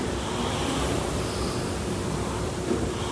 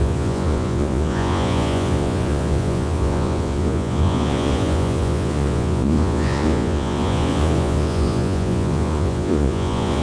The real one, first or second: first